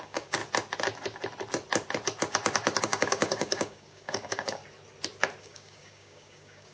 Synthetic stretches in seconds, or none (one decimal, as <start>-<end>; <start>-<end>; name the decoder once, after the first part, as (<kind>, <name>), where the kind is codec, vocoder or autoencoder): 0.0-0.4 (codec, DAC); 2.8-4.6; 5.4-6.7